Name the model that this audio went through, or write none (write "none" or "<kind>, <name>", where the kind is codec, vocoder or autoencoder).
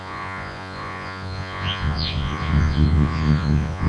vocoder, Vocos